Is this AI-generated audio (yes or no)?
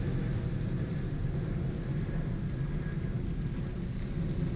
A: no